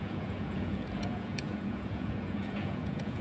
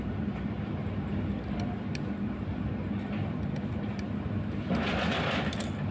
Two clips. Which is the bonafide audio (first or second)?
second